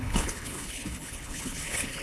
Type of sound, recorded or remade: remade